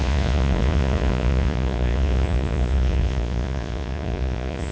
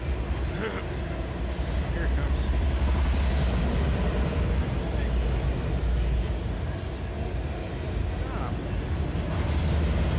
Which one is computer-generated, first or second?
first